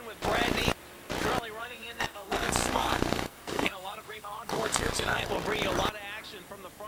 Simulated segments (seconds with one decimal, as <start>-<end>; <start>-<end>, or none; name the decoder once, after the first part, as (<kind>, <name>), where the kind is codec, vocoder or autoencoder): 1.6-5.3 (codec, SNAC)